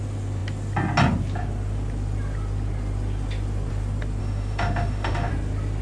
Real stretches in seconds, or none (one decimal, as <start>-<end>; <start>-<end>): 0.0-4.2; 5.3-5.8